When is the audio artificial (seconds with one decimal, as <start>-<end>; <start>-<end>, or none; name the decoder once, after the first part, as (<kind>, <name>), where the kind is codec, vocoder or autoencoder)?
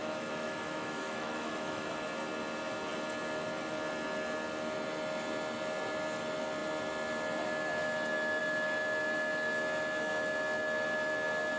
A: 0.0-1.9 (autoencoder, DAC-VAE)